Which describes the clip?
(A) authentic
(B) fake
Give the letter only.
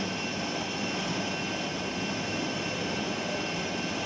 A